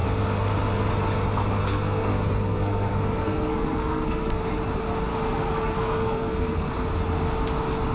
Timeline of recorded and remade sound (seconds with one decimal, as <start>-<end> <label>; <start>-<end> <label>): 0.0-1.7 recorded; 1.7-4.4 remade; 4.4-5.1 recorded; 5.1-6.7 remade; 6.7-7.9 recorded